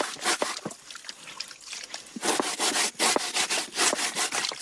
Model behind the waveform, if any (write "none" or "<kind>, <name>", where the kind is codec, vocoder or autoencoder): none